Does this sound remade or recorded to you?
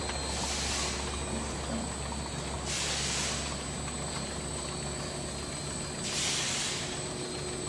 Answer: recorded